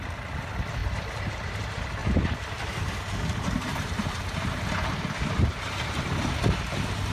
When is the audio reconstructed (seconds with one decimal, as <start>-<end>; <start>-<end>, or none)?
0.8-1.6; 2.0-6.3